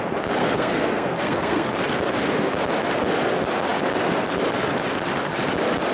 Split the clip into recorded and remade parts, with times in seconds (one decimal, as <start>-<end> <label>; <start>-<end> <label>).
0.0-0.4 recorded; 0.4-1.7 remade; 1.7-5.9 recorded